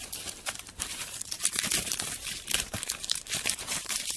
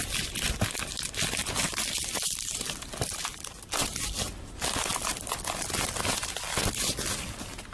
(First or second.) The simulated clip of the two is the first